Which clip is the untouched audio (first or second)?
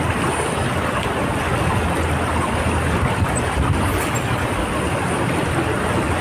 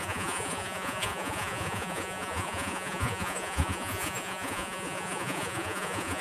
first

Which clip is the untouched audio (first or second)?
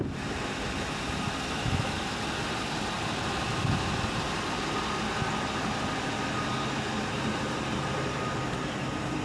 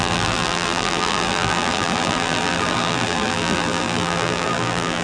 first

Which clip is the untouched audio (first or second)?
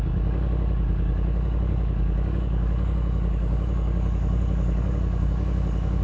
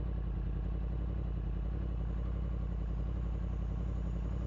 second